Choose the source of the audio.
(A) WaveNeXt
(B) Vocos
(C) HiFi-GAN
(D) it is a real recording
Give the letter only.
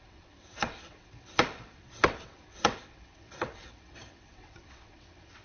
A